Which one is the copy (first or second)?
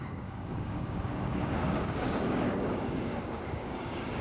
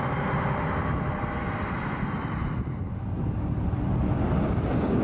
first